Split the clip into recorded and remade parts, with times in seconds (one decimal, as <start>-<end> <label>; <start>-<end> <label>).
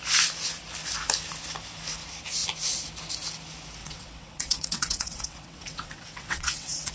0.0-3.8 recorded; 3.8-6.9 remade